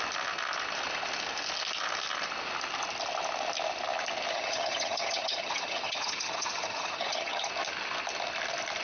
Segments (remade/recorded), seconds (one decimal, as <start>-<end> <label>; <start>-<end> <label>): 0.0-4.3 recorded; 4.3-7.5 remade; 7.5-8.8 recorded

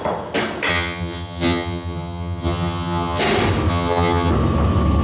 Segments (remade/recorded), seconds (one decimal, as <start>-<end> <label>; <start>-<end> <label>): 0.0-0.7 recorded; 0.7-3.2 remade; 3.2-3.7 recorded; 3.7-4.3 remade; 4.3-5.0 recorded

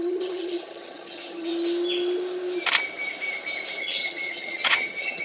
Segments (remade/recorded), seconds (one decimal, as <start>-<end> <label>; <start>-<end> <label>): 0.0-1.5 remade; 1.5-3.8 recorded; 3.8-5.2 remade

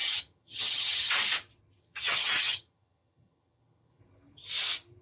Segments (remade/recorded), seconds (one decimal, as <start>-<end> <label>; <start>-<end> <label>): 0.0-1.1 remade; 1.1-1.8 recorded; 1.8-4.0 remade; 4.0-5.0 recorded

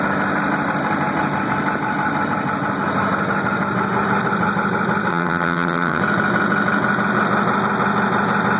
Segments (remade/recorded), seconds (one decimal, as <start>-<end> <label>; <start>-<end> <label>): 0.0-5.1 recorded; 5.1-6.0 remade; 6.0-8.6 recorded